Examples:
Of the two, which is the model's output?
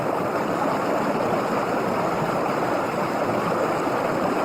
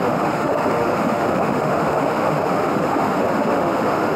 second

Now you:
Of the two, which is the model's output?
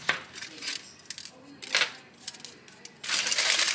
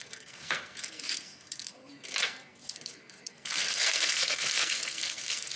second